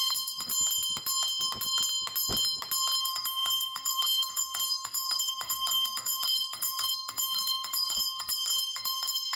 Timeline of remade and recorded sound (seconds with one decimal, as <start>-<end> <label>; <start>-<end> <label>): 0.0-0.5 remade; 0.5-3.0 recorded; 3.0-9.4 remade